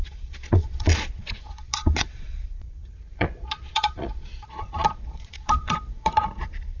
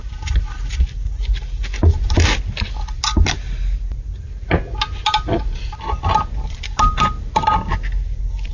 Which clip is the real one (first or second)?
second